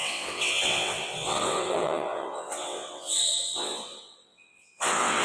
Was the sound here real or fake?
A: fake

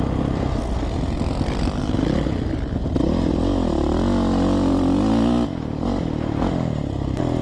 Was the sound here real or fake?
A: real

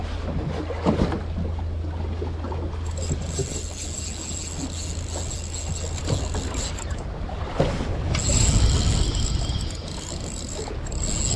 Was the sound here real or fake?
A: real